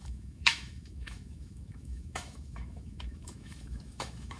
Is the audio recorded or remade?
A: remade